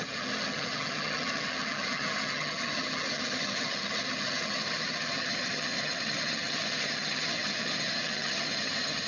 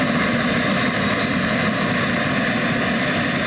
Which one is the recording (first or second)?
second